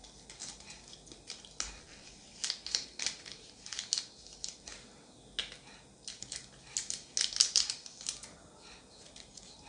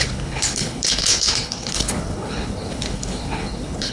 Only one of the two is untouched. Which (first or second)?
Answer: first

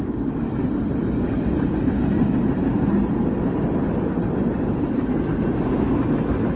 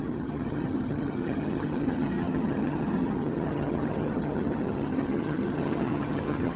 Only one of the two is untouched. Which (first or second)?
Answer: first